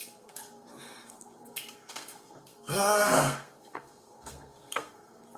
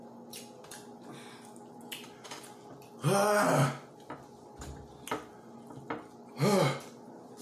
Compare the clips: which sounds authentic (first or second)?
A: second